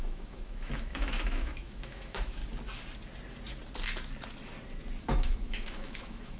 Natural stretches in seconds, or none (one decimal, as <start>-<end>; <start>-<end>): 2.4-5.0